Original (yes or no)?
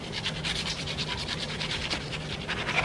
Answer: yes